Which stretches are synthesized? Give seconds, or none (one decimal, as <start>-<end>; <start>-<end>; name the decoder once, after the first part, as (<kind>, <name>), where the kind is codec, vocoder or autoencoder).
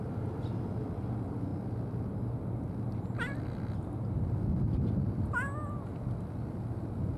none